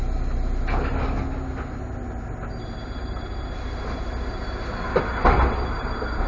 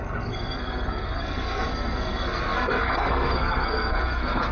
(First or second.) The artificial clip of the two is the second